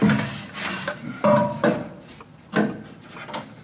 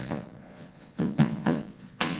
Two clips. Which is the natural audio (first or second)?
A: first